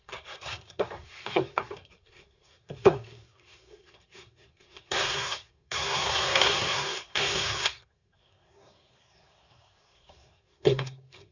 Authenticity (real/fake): fake